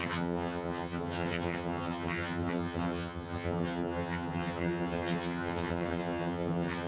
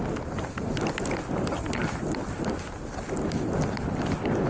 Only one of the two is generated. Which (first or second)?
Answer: first